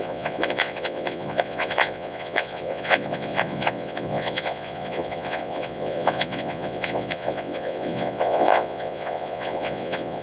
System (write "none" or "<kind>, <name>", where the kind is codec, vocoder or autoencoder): vocoder, Vocos